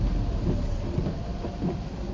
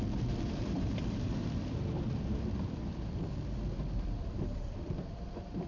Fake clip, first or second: second